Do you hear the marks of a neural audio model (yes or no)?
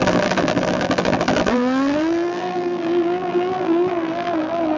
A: yes